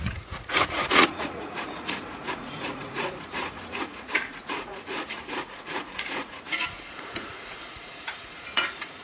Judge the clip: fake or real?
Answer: fake